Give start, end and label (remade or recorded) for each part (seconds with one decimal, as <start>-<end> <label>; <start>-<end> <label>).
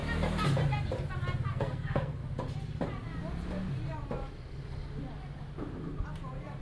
0.0-1.5 recorded; 1.5-2.2 remade; 2.2-6.6 recorded